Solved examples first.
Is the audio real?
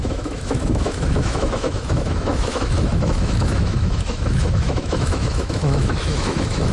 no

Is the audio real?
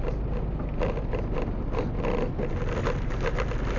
yes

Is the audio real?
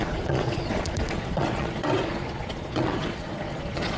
no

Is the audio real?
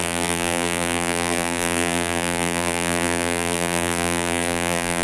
no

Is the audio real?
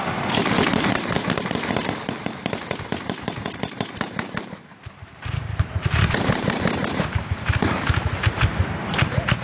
no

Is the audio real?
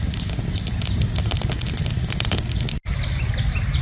yes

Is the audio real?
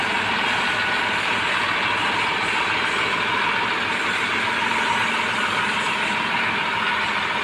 yes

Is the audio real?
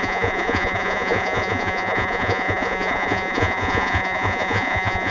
no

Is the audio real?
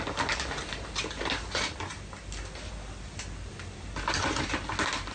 yes